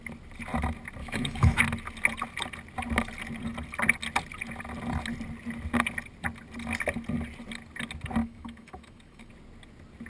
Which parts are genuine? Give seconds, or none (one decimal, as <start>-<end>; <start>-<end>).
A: 0.0-1.0; 1.6-8.2; 9.3-10.1